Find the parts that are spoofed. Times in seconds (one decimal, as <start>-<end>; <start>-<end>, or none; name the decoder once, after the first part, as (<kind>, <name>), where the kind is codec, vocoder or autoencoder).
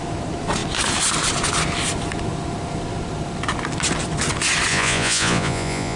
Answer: 4.7-6.0 (vocoder, Vocos)